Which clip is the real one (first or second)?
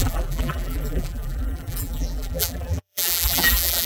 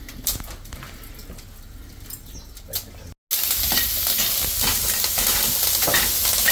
second